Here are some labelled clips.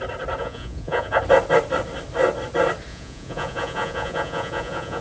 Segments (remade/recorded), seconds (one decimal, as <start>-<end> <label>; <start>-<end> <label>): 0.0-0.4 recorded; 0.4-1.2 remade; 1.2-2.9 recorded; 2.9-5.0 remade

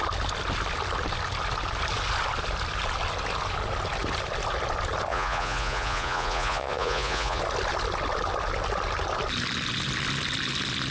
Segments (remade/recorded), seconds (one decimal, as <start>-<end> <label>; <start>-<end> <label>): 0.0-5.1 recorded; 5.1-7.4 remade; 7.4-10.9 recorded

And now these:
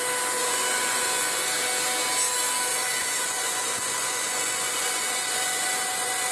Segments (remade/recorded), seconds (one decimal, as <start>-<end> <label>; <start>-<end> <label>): 0.0-0.4 recorded; 0.4-1.4 remade; 1.4-2.7 recorded; 2.7-6.3 remade

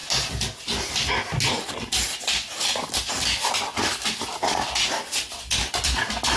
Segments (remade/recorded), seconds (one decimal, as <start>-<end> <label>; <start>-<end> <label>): 0.0-6.4 recorded